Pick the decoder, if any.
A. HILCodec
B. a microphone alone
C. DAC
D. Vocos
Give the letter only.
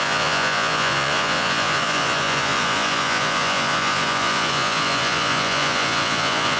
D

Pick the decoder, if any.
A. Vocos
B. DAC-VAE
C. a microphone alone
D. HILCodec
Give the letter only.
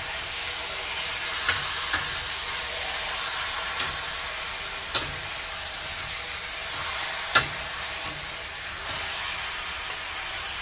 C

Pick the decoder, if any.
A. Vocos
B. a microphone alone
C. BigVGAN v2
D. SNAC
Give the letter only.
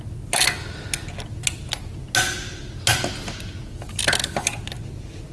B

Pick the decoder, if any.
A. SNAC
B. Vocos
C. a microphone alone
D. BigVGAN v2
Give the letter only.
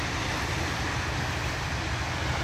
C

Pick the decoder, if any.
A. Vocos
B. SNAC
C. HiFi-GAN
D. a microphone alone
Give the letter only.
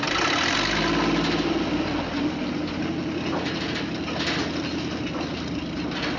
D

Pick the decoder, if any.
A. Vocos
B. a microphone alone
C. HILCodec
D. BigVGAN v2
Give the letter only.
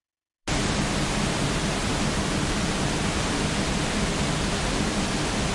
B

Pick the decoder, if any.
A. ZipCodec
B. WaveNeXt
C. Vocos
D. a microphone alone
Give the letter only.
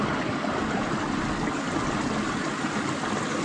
D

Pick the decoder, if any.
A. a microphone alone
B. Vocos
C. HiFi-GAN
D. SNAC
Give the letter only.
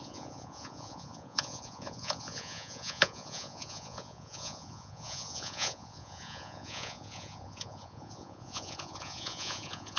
B